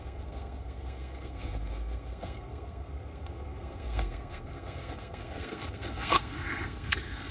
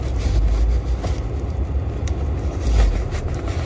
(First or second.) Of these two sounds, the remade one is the first